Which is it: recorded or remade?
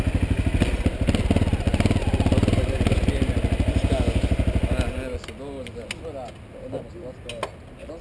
recorded